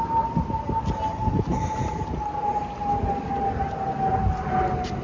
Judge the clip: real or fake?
real